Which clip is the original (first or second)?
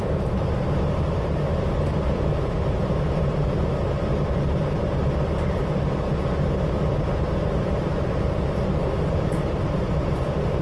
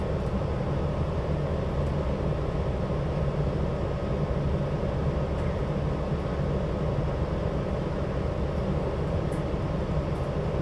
second